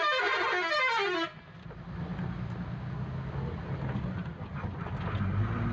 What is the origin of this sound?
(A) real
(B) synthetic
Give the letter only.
A